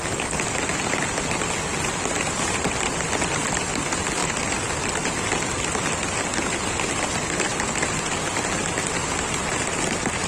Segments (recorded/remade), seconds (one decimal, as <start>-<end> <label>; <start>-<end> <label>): 0.0-10.3 recorded